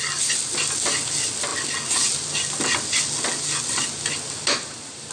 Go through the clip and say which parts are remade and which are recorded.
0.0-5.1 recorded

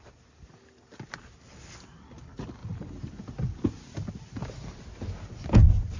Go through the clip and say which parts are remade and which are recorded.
0.0-6.0 recorded

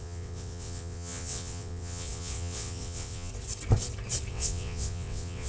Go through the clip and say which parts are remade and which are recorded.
0.0-3.3 remade; 3.3-4.3 recorded; 4.3-5.5 remade

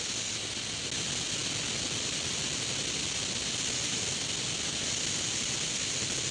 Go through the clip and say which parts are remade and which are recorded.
0.0-6.3 recorded